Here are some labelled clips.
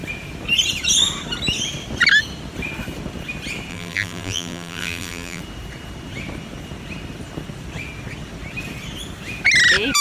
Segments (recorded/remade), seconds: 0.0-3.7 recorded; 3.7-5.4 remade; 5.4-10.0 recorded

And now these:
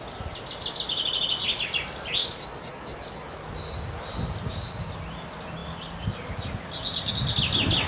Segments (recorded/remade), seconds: 0.0-2.2 recorded; 2.2-3.5 remade; 3.5-7.9 recorded

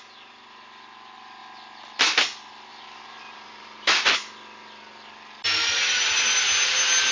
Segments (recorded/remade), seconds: 0.0-2.7 recorded; 2.7-4.1 remade; 4.1-7.1 recorded

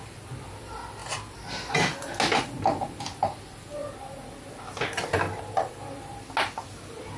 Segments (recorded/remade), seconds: 0.0-7.2 recorded

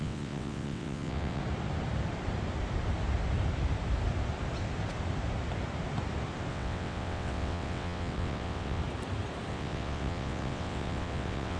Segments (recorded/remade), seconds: 0.0-1.4 remade; 1.4-6.5 recorded; 6.5-8.8 remade; 8.8-9.5 recorded; 9.5-11.6 remade